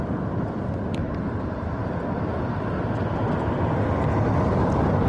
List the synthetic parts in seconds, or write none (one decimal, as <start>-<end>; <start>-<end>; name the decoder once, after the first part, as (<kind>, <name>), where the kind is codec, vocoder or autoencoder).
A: 1.0-1.7 (vocoder, BigVGAN v2)